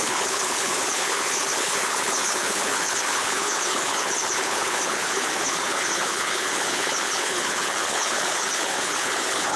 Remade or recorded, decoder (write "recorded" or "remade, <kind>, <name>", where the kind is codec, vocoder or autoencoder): remade, codec, HILCodec